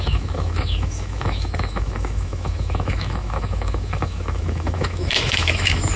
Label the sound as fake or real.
fake